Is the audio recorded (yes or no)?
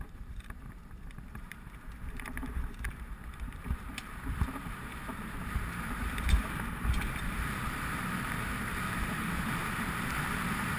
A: no